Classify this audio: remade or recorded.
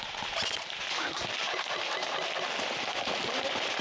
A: recorded